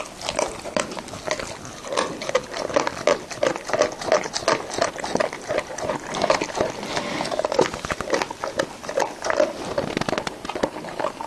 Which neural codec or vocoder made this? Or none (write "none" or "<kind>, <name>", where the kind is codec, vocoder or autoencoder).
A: none